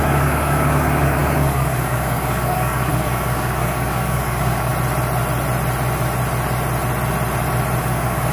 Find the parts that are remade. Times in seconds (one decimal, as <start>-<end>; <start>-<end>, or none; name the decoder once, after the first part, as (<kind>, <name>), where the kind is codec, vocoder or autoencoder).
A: 0.0-4.7 (codec, DAC); 7.8-8.3